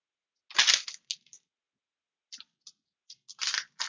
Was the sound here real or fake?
real